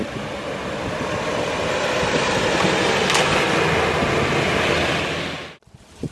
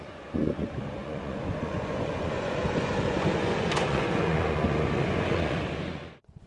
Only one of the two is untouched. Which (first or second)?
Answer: first